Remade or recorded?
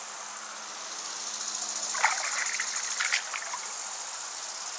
recorded